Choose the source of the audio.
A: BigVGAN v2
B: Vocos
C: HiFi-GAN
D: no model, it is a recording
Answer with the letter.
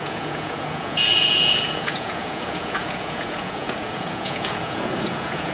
B